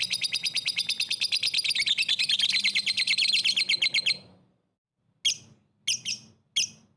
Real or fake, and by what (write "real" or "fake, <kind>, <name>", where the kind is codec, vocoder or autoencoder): real